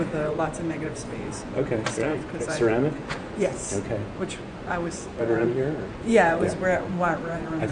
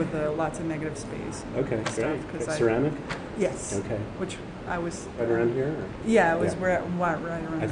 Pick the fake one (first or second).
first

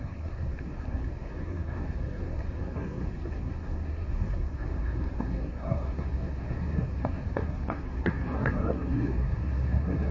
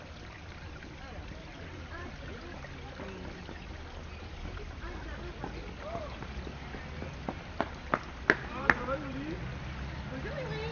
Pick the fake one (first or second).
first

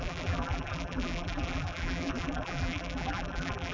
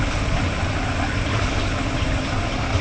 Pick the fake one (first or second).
first